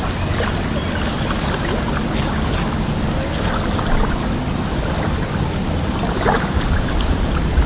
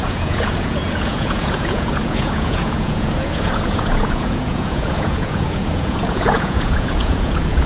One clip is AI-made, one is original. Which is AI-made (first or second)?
second